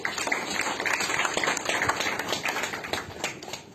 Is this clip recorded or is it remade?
recorded